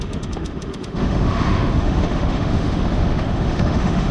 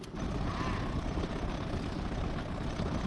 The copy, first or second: first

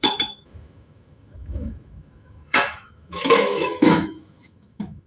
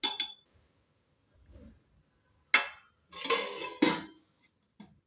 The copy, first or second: first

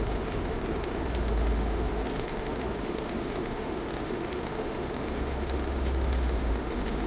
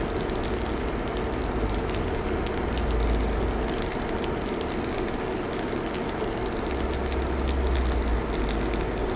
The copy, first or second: first